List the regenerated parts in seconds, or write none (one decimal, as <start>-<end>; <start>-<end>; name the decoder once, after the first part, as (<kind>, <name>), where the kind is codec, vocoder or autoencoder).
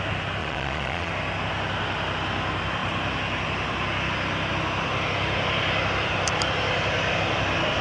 0.4-1.1 (vocoder, Vocos)